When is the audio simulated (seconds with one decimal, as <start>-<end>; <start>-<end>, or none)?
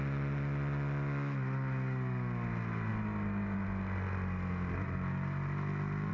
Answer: none